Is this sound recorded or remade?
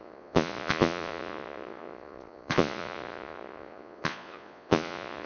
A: remade